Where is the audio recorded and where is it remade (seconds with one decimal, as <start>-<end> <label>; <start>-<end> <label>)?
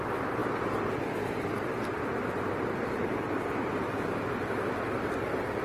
0.0-3.0 recorded; 3.0-3.8 remade; 3.8-5.6 recorded